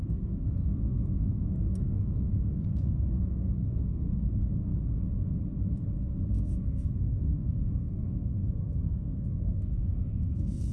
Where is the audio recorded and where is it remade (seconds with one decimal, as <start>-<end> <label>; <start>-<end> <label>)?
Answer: 0.0-4.7 remade; 4.7-6.3 recorded; 6.3-10.7 remade